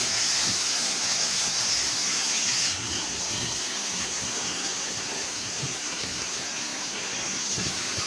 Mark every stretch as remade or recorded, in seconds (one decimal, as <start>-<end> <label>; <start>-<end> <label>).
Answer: 0.0-8.1 remade